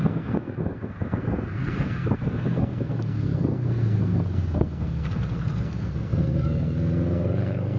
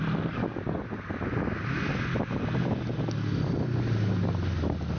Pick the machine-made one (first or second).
first